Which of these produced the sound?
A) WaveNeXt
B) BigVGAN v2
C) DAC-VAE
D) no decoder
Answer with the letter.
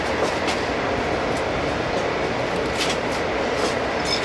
D